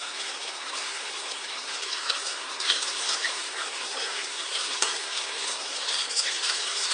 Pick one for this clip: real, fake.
fake